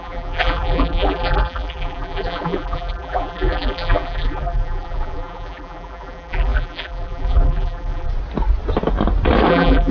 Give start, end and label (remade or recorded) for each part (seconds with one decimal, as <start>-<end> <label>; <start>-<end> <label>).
0.0-8.1 remade; 8.1-9.5 recorded; 9.5-9.9 remade